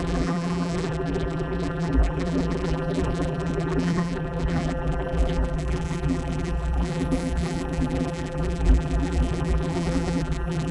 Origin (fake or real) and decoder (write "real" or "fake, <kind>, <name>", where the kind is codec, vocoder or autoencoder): fake, vocoder, BigVGAN v2